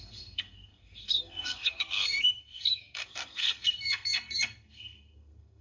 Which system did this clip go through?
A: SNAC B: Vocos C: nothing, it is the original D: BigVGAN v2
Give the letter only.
A